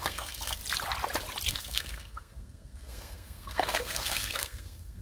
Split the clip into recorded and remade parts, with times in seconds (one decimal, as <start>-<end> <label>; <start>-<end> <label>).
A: 0.0-0.6 remade; 0.6-1.5 recorded; 1.5-5.0 remade